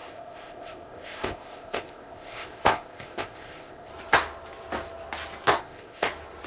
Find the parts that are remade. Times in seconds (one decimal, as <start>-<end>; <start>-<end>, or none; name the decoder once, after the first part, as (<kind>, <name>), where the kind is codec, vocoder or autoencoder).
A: 0.0-3.9 (codec, ZipCodec); 5.6-6.1